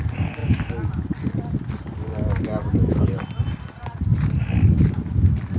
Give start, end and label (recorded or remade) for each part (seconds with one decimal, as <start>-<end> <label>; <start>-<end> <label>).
0.0-2.6 recorded; 2.6-3.2 remade; 3.2-5.6 recorded